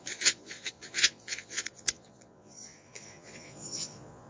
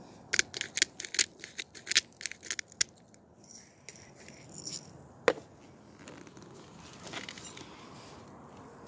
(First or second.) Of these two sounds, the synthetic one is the first